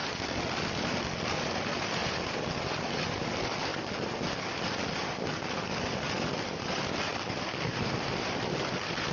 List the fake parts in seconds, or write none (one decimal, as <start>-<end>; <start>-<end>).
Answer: 1.0-2.0; 2.9-3.7; 6.3-7.1; 7.9-9.1